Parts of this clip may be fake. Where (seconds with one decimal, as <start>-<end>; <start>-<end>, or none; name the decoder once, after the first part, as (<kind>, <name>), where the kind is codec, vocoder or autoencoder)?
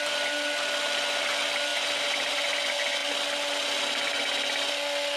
none